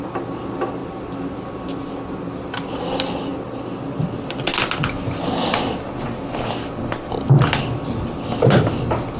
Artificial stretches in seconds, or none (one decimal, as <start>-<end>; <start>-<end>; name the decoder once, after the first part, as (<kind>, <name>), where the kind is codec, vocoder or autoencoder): 0.8-1.5 (vocoder, BigVGAN v2)